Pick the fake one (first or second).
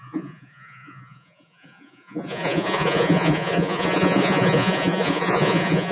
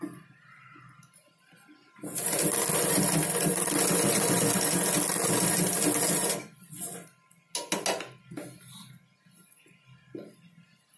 first